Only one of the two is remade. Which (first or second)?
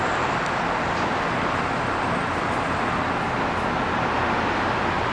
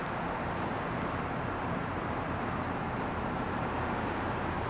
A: second